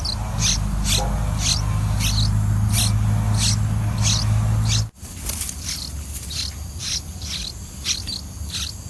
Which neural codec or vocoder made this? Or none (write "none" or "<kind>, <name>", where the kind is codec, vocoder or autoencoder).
none